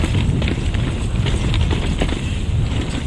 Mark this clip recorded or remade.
recorded